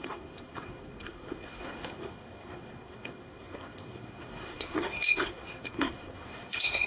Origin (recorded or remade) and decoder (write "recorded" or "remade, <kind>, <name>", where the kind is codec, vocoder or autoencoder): remade, codec, SNAC